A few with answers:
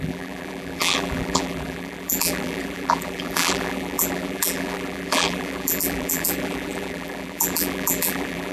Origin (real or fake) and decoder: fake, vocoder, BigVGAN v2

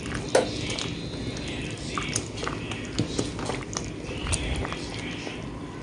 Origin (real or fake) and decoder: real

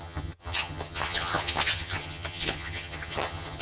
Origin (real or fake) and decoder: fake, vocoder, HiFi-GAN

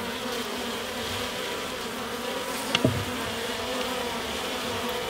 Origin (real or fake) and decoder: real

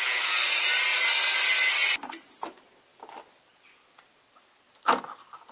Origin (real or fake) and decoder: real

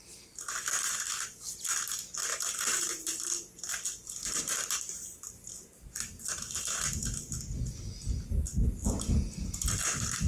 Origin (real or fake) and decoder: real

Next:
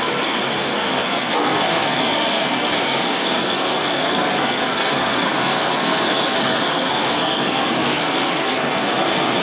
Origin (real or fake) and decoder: fake, codec, SNAC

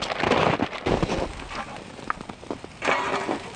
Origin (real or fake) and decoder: real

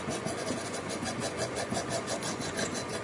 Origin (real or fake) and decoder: fake, vocoder, Vocos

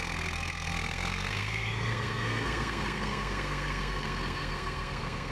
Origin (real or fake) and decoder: fake, codec, SNAC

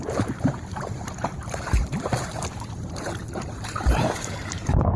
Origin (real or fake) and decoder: fake, vocoder, BigVGAN v2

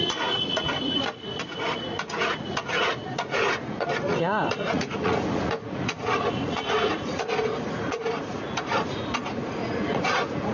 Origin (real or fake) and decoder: fake, vocoder, Vocos